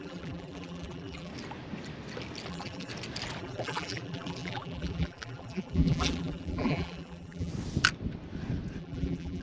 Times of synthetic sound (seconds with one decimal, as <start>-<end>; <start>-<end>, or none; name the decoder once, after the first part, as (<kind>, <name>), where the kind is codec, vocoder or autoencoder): 0.0-1.3 (vocoder, BigVGAN v2); 2.5-2.9; 3.4-7.5; 8.8-9.4